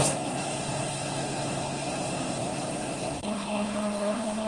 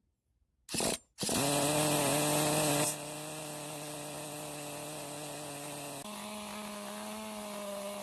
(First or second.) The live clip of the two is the second